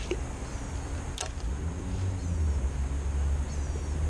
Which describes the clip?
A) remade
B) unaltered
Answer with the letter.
B